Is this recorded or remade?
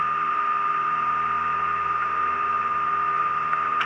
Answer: recorded